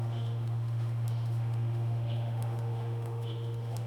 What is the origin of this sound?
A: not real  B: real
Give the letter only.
A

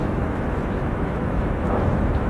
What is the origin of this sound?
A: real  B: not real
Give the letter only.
B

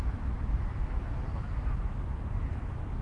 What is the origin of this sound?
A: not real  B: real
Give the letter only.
A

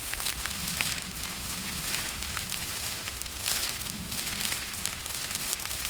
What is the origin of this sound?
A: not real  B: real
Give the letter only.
A